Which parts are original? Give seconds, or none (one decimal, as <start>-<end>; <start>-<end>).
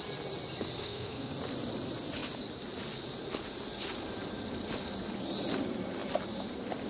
0.0-0.8; 1.3-6.9